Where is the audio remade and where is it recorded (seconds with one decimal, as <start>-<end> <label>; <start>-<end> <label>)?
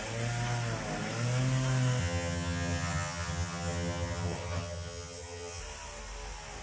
0.0-2.0 recorded; 2.0-5.6 remade; 5.6-6.6 recorded